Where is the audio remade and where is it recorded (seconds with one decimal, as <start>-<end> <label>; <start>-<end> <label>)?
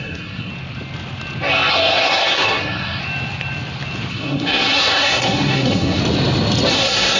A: 0.0-0.5 remade; 0.5-1.7 recorded; 1.7-3.0 remade; 3.0-4.1 recorded; 4.1-6.0 remade; 6.0-6.7 recorded; 6.7-7.2 remade